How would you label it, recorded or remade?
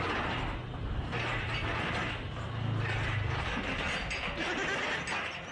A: recorded